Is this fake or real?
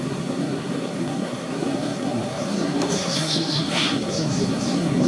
fake